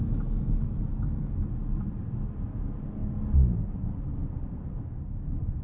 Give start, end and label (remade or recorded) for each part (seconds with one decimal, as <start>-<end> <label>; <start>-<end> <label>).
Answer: 0.0-0.9 recorded; 0.9-1.5 remade; 1.5-5.6 recorded